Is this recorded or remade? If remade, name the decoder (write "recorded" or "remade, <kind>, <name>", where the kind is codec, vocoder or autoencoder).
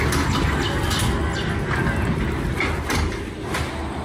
recorded